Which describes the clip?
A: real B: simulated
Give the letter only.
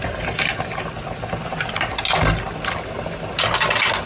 A